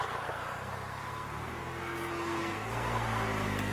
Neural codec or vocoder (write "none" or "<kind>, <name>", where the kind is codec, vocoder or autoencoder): codec, SNAC